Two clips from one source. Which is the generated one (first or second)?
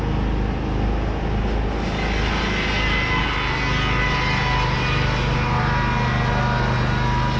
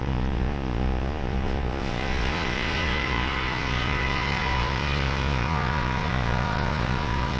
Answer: second